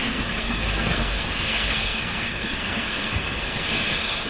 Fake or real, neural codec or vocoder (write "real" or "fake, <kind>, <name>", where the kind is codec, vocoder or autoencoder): fake, codec, SNAC